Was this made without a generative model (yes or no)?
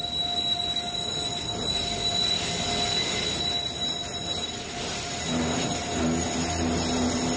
yes